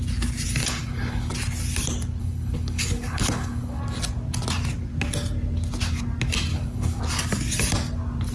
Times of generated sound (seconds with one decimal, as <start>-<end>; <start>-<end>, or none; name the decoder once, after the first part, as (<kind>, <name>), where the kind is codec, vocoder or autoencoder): 0.6-1.3 (codec, HILCodec); 2.2-3.8; 6.5-7.0